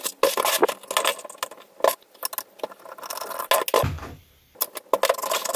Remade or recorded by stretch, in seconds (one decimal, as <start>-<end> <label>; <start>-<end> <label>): 0.0-5.6 recorded